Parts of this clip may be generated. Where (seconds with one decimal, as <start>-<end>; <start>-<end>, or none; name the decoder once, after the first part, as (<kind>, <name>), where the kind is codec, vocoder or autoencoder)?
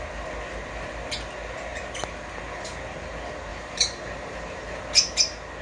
3.5-4.8 (vocoder, BigVGAN v2)